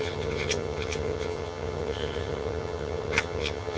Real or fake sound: fake